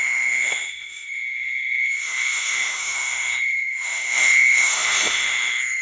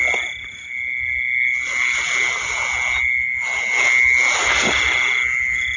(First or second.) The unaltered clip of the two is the second